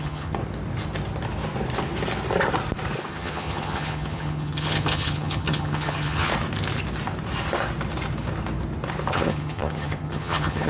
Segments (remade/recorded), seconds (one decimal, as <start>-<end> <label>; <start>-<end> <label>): 0.0-0.4 remade; 0.4-3.1 recorded; 3.1-6.3 remade; 6.3-9.1 recorded; 9.1-10.7 remade